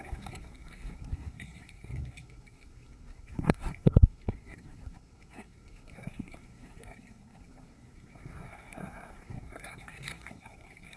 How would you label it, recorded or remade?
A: remade